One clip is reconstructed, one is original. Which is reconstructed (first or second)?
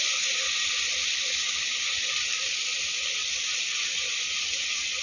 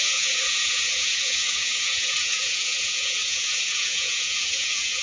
second